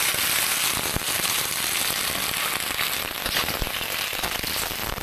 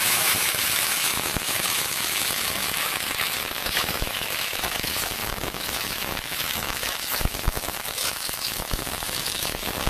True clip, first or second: first